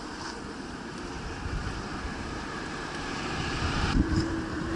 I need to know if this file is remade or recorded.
remade